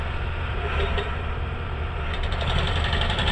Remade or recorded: remade